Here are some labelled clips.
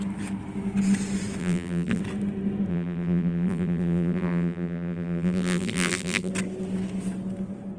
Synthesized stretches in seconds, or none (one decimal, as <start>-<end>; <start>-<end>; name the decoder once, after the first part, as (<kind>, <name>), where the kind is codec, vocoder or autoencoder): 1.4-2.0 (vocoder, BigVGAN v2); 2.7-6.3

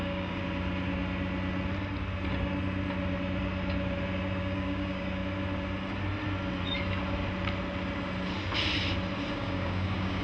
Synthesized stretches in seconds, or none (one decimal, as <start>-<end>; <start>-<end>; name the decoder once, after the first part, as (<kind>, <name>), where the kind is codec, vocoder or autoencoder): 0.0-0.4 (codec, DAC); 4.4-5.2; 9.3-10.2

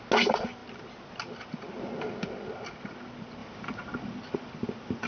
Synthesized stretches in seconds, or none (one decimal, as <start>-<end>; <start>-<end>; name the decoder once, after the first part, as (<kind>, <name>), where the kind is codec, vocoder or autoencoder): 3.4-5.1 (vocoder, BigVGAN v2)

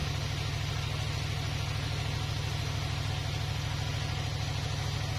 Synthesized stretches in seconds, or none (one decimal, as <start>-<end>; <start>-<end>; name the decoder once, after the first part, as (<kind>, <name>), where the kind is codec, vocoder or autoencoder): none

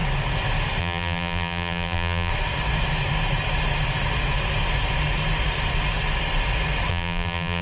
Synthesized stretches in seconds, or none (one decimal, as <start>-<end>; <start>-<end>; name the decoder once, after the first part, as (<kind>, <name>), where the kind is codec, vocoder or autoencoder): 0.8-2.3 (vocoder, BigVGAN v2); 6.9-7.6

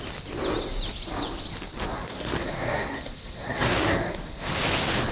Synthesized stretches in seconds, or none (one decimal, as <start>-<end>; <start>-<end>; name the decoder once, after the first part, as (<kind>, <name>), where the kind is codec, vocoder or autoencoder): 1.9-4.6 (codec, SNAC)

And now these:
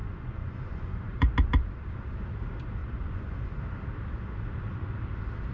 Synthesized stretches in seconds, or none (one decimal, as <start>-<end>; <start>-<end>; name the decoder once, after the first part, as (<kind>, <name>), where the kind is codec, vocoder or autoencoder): 0.0-1.3 (vocoder, Vocos); 2.8-3.6

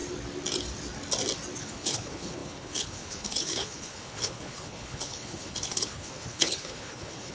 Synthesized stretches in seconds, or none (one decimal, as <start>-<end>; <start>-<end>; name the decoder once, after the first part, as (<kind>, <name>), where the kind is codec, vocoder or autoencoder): 1.6-7.3 (codec, HILCodec)